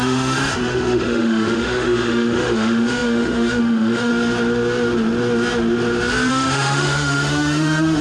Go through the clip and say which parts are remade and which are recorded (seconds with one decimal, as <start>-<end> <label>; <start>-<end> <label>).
0.0-4.1 remade; 4.1-6.3 recorded; 6.3-8.0 remade